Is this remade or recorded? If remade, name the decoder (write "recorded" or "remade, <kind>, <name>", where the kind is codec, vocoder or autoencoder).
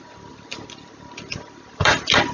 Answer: recorded